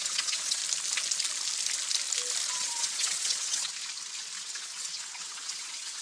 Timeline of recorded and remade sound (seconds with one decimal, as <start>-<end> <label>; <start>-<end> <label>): 0.0-0.6 remade; 0.6-2.5 recorded; 2.5-3.7 remade; 3.7-4.4 recorded; 4.4-6.0 remade